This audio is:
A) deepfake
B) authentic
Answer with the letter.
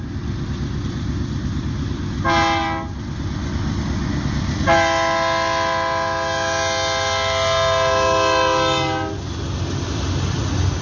B